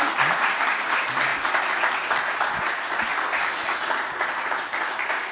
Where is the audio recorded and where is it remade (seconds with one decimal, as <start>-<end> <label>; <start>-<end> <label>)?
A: 0.0-5.3 recorded

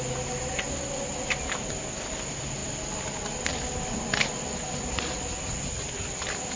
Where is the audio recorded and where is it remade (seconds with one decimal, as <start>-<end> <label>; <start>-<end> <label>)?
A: 0.0-6.6 recorded